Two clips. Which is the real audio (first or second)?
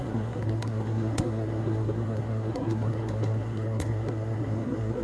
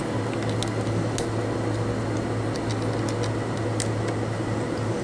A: second